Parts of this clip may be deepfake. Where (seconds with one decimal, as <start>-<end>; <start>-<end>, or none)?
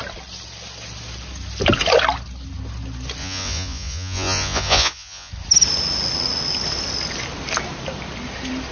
3.2-5.3